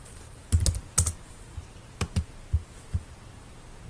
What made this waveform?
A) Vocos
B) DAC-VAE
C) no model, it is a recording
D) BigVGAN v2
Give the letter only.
C